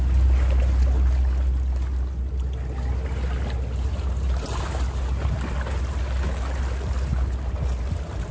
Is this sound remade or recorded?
recorded